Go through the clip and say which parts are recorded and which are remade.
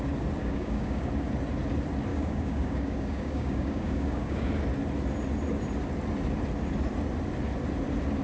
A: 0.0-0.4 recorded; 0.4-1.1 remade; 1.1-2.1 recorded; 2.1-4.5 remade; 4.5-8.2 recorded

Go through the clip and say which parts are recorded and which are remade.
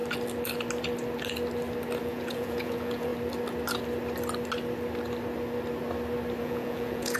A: 0.0-2.0 recorded; 2.0-3.1 remade; 3.1-6.4 recorded; 6.4-7.2 remade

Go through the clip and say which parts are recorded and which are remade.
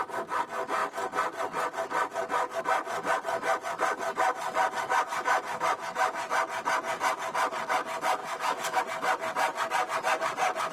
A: 0.0-5.1 recorded; 5.1-6.2 remade; 6.2-8.2 recorded; 8.2-8.8 remade; 8.8-10.7 recorded